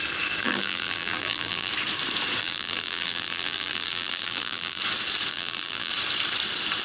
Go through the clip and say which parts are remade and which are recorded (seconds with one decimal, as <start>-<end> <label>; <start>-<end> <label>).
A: 0.0-0.4 recorded; 0.4-1.7 remade; 1.7-2.4 recorded; 2.4-4.8 remade; 4.8-5.3 recorded; 5.3-5.9 remade; 5.9-6.8 recorded